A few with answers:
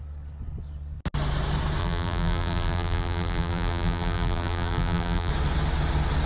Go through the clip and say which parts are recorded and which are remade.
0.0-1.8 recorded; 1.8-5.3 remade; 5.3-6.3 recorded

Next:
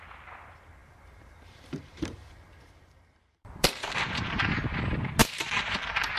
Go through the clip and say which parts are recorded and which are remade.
0.0-0.8 recorded; 0.8-4.5 remade; 4.5-5.2 recorded; 5.2-6.2 remade

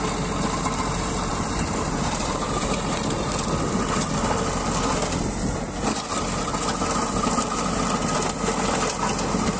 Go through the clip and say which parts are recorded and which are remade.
0.0-1.3 recorded; 1.3-3.3 remade; 3.3-9.6 recorded

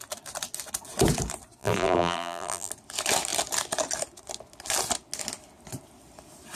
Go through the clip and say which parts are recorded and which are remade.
0.0-1.6 recorded; 1.6-2.7 remade; 2.7-6.5 recorded

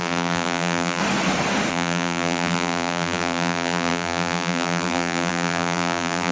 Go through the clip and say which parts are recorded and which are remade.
0.0-1.0 remade; 1.0-1.7 recorded; 1.7-6.3 remade